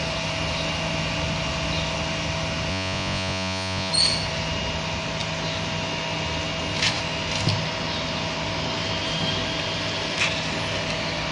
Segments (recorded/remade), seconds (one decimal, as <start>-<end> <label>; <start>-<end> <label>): 0.0-2.7 recorded; 2.7-3.9 remade; 3.9-11.3 recorded